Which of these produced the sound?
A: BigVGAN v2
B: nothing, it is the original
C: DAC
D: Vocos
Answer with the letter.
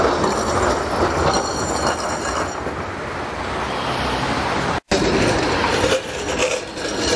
B